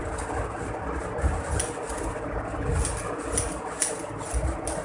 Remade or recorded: recorded